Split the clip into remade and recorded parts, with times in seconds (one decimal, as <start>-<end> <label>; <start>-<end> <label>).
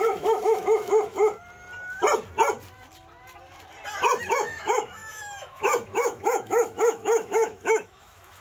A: 0.0-1.2 remade; 1.2-4.2 recorded; 4.2-8.4 remade